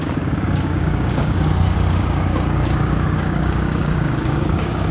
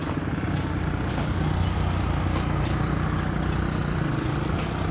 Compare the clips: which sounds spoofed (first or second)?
first